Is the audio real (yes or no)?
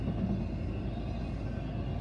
yes